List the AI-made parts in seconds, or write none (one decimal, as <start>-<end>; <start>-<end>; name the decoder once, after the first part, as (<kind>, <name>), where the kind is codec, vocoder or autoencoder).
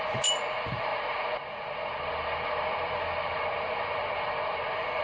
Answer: none